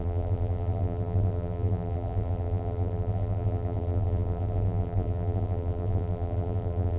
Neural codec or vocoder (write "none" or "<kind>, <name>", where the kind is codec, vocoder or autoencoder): vocoder, BigVGAN v2